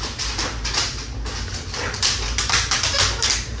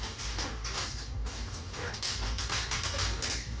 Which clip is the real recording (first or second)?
first